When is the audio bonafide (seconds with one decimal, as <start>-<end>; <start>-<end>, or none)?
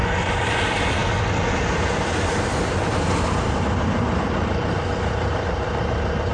0.0-6.3